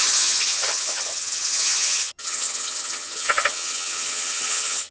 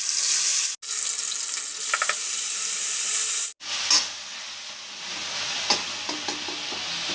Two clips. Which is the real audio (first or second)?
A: second